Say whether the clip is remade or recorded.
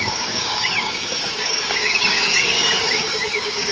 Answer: remade